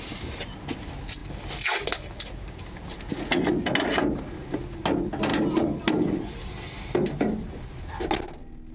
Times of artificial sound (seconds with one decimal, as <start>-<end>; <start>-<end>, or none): none